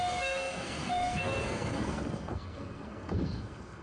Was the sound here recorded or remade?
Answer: remade